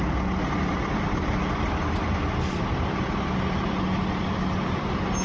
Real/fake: real